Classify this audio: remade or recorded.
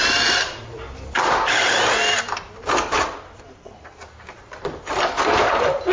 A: remade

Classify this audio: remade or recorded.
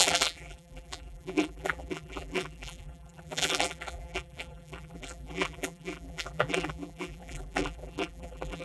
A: remade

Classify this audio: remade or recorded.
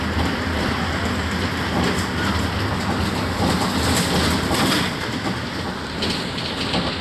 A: recorded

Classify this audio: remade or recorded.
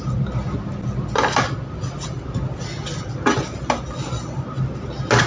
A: recorded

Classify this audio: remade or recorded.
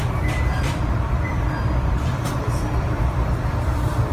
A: remade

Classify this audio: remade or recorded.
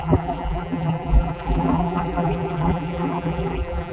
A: remade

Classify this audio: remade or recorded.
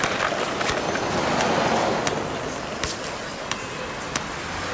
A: recorded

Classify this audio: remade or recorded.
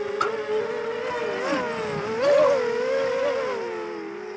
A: recorded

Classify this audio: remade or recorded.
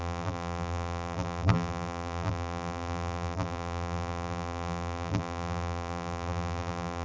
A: remade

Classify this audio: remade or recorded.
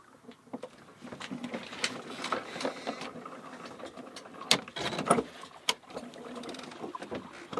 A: recorded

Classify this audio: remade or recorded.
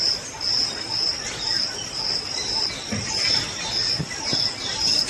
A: recorded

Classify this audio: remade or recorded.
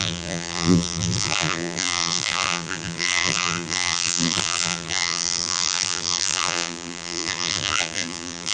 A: remade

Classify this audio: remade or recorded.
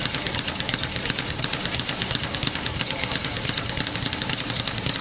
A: recorded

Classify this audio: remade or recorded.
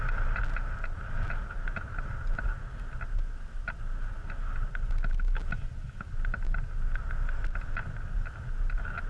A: recorded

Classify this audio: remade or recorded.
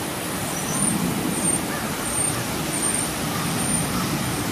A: recorded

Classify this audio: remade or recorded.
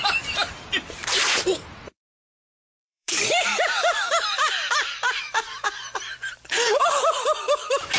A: remade